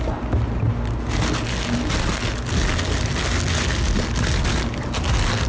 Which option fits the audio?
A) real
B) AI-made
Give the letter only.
A